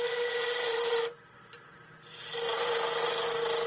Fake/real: real